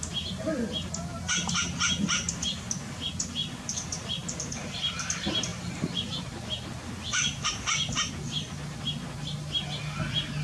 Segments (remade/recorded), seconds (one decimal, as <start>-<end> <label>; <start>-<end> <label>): 0.0-3.4 recorded; 3.4-5.0 remade; 5.0-5.5 recorded; 5.5-6.2 remade; 6.2-6.7 recorded; 6.7-8.1 remade; 8.1-10.4 recorded